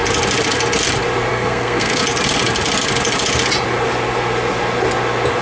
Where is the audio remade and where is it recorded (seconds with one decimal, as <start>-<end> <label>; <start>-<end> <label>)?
0.0-1.3 recorded; 1.3-2.0 remade; 2.0-5.4 recorded